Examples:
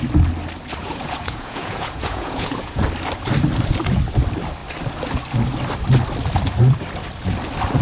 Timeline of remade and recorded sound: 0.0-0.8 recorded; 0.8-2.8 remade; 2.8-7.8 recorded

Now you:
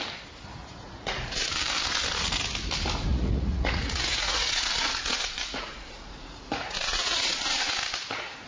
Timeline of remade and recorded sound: 0.0-0.6 recorded; 0.6-1.5 remade; 1.5-3.1 recorded; 3.1-7.7 remade; 7.7-8.5 recorded

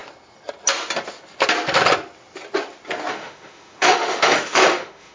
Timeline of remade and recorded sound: 0.0-3.1 recorded; 3.1-5.1 remade

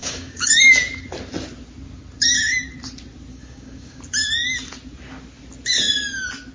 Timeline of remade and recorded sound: 0.0-0.6 remade; 0.6-3.3 recorded; 3.3-4.0 remade; 4.0-6.5 recorded

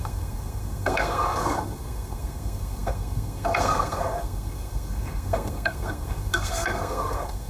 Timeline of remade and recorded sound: 0.0-7.5 remade

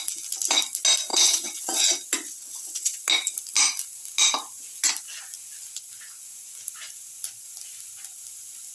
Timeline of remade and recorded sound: 0.0-1.1 recorded; 1.1-1.8 remade; 1.8-2.3 recorded; 2.3-3.0 remade; 3.0-8.7 recorded

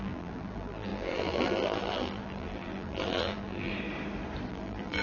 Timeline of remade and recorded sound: 0.0-3.7 remade; 3.7-4.5 recorded; 4.5-5.0 remade

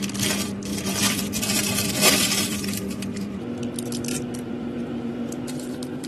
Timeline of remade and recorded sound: 0.0-0.7 recorded; 0.7-3.4 remade; 3.4-4.1 recorded; 4.1-6.1 remade